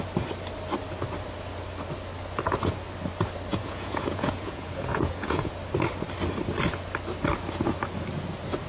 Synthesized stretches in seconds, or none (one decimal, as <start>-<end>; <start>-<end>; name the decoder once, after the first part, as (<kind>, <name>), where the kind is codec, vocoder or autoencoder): 3.5-5.5 (vocoder, Vocos)